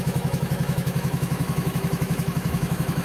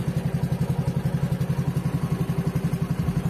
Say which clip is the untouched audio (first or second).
second